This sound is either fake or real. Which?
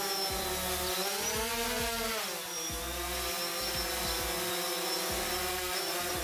real